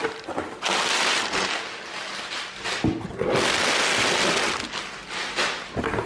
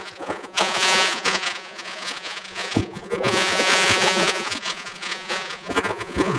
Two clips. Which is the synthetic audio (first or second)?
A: second